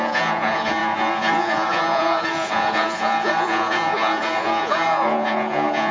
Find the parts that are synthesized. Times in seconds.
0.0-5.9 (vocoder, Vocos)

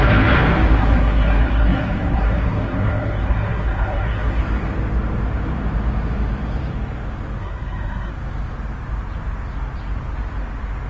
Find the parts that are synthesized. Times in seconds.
0.8-4.4 (codec, SNAC); 7.4-8.1

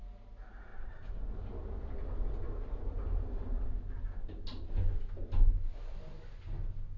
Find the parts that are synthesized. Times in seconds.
none

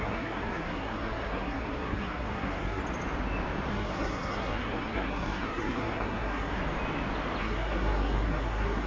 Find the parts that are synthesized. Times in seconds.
0.0-2.8 (codec, SNAC); 3.7-6.6; 7.4-8.9

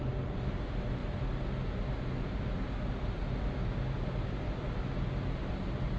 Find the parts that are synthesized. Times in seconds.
none

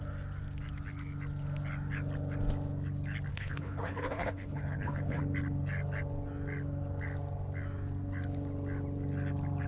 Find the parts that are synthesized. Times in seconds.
3.3-5.2 (codec, HILCodec)

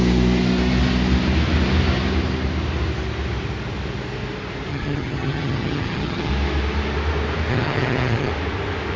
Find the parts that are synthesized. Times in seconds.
4.7-6.3 (vocoder, HiFi-GAN); 7.5-8.3